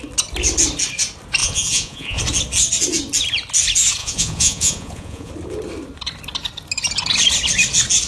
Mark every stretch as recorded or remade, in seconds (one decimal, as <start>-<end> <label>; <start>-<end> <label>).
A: 0.0-1.4 recorded; 1.4-2.2 remade; 2.2-4.0 recorded; 4.0-5.3 remade; 5.3-8.1 recorded